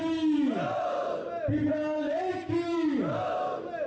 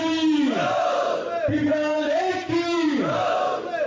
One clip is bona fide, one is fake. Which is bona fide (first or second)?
first